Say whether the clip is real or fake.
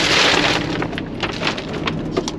real